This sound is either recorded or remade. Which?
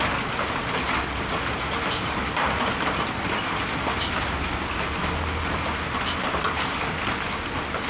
recorded